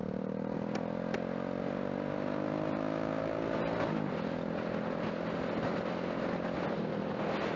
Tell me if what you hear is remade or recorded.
recorded